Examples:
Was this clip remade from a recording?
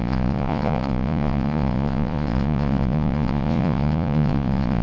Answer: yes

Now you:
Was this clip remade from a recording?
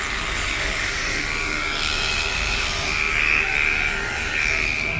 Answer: yes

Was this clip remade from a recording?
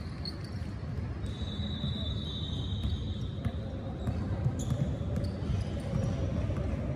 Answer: no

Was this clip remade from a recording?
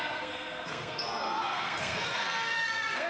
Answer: yes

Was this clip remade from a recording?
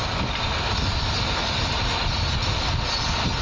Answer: no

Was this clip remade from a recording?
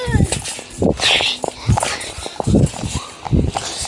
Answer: no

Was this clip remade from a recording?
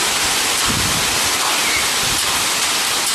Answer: no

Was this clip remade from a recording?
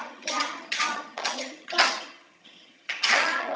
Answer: yes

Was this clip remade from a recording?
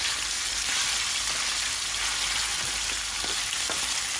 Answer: no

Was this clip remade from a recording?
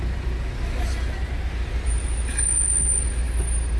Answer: no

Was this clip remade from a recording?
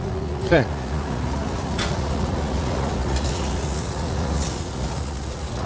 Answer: yes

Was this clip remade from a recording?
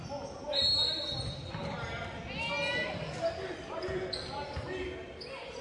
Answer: no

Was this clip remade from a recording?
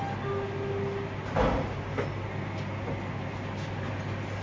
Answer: no